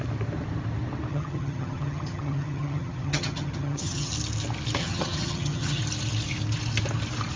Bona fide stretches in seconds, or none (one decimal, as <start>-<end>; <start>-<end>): 0.0-1.1; 4.1-4.8; 5.8-7.4